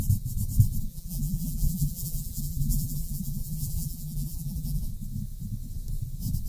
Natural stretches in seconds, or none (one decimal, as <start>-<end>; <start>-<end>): 0.0-0.9; 4.8-6.5